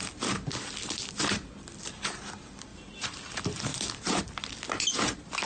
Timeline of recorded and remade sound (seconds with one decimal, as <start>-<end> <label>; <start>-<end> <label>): 0.0-5.5 recorded